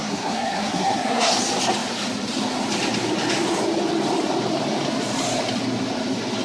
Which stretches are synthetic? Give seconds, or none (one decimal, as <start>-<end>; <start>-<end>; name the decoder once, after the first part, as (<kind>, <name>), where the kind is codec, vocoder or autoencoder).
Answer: 0.0-1.3 (codec, SNAC)